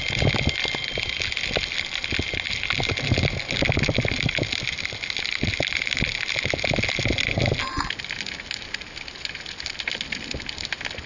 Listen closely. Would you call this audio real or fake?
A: real